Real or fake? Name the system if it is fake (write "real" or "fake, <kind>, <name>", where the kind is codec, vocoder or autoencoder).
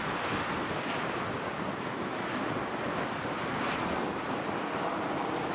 real